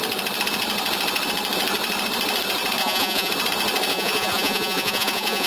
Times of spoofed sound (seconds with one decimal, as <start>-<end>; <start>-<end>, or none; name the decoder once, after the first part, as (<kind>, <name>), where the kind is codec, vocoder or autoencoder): 2.8-3.3 (vocoder, Vocos); 3.9-5.5